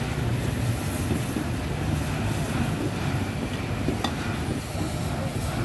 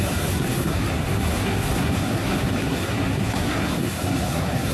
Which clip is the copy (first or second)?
second